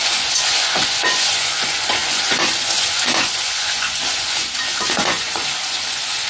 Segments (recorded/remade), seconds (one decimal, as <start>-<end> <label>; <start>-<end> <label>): 0.0-6.3 remade